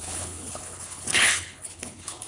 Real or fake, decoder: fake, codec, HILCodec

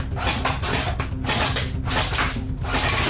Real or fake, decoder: real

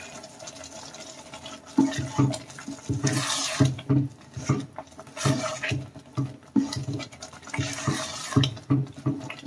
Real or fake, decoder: real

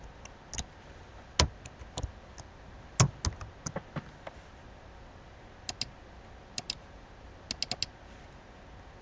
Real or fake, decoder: real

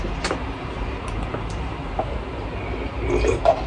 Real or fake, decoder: real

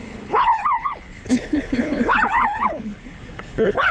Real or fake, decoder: fake, codec, HILCodec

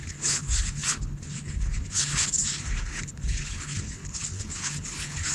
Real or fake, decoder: fake, codec, HILCodec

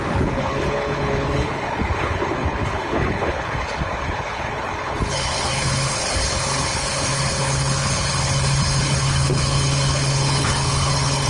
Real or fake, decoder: fake, codec, HILCodec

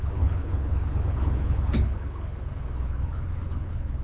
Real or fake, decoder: fake, codec, HILCodec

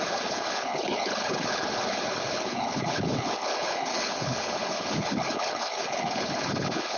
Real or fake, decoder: fake, codec, HILCodec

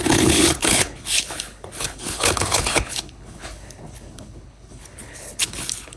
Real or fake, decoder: fake, codec, HILCodec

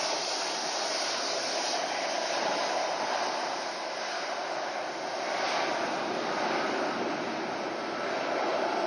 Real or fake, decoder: real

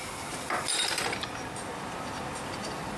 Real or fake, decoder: real